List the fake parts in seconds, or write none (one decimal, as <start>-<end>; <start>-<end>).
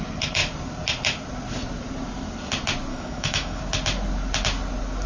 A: 2.9-3.6